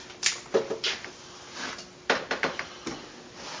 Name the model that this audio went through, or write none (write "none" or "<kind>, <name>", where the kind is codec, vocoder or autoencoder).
none